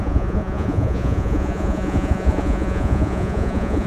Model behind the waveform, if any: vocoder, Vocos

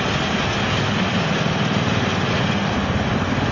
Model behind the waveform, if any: none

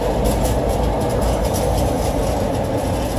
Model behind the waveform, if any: none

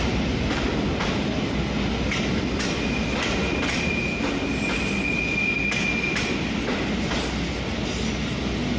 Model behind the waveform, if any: none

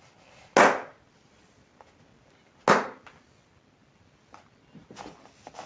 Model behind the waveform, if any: none